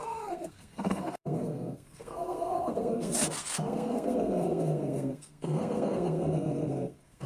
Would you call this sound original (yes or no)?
no